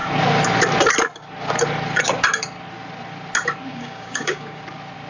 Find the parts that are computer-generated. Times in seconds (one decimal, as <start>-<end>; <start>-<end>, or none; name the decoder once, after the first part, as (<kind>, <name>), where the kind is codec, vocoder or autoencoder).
3.7-4.6 (codec, DAC)